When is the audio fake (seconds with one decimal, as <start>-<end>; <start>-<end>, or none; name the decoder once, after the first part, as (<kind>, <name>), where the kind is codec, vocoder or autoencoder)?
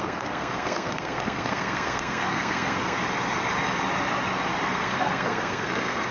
0.0-3.0 (codec, SNAC); 4.5-6.1